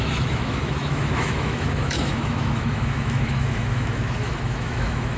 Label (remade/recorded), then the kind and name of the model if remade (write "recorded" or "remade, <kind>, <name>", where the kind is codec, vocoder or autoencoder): remade, autoencoder, DAC-VAE